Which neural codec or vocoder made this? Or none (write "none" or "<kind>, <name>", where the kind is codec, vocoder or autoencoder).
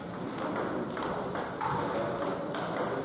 none